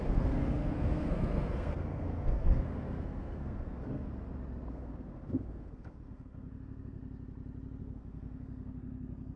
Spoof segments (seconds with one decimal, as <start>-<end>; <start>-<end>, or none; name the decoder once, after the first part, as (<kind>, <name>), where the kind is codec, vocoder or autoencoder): 0.0-4.1 (codec, SNAC); 4.7-7.0; 7.8-9.4